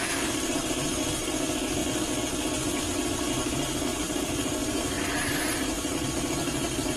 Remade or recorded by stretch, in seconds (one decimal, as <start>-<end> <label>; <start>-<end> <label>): 0.0-3.9 recorded; 3.9-6.1 remade; 6.1-7.0 recorded